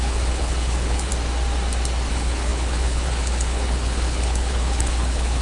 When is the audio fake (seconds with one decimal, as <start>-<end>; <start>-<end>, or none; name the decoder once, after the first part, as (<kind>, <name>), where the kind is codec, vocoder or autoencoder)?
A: 0.0-1.1 (codec, HILCodec); 2.1-5.4